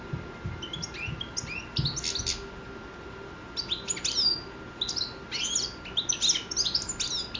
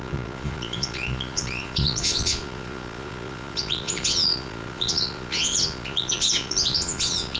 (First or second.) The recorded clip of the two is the first